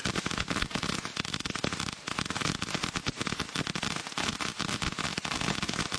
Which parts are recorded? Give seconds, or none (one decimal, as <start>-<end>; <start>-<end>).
0.0-6.0